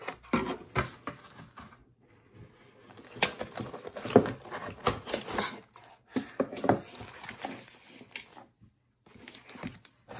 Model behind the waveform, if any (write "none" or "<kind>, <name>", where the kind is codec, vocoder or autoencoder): none